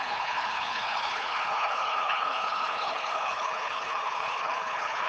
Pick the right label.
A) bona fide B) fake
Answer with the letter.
B